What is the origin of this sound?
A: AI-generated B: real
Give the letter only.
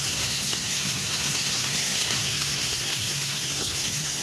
A